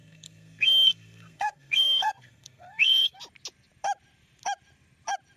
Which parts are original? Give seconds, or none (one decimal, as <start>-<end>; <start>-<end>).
3.2-5.4